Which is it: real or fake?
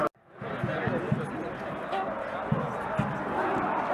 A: real